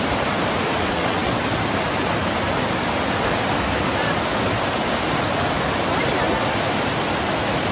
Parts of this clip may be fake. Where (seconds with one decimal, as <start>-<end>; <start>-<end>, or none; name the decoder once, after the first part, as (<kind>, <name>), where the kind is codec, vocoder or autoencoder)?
0.9-1.4 (vocoder, WaveNeXt)